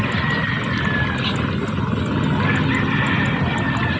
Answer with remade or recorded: recorded